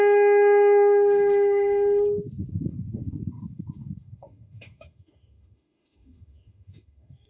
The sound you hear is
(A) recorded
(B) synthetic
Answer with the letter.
B